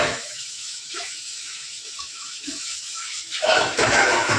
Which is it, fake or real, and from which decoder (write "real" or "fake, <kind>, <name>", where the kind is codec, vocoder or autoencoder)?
fake, autoencoder, DAC-VAE